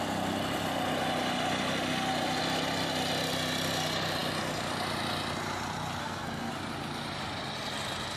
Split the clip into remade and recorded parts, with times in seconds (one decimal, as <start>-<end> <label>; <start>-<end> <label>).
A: 0.0-6.0 recorded; 6.0-6.5 remade; 6.5-8.2 recorded